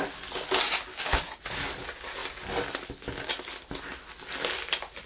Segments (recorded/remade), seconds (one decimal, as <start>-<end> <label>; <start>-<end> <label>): 0.0-0.9 recorded; 0.9-1.4 remade; 1.4-5.1 recorded